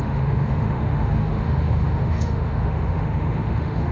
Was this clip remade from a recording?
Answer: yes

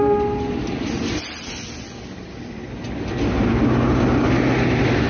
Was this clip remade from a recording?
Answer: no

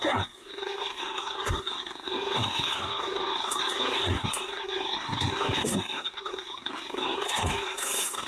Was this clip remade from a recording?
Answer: yes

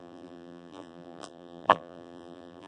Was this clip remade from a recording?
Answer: yes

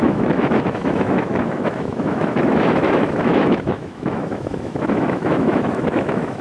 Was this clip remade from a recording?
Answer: yes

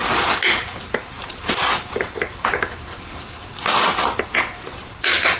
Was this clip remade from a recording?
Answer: yes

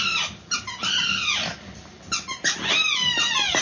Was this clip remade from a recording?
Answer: no